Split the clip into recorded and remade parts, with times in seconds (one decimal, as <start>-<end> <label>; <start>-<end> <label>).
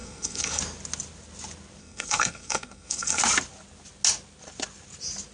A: 0.0-0.6 remade; 0.6-1.8 recorded; 1.8-3.2 remade; 3.2-5.3 recorded